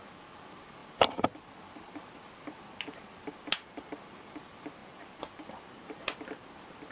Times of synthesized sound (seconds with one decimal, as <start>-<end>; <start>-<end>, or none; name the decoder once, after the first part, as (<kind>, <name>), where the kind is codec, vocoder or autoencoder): none